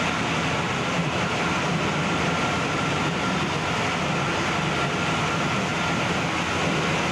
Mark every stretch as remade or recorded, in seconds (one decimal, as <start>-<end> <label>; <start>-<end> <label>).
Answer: 0.0-1.0 recorded; 1.0-5.3 remade; 5.3-7.1 recorded